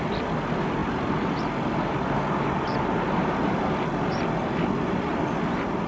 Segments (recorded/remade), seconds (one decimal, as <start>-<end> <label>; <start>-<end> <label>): 0.0-5.9 recorded